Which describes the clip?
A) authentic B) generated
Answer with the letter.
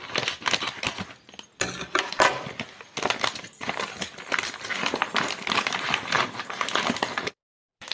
A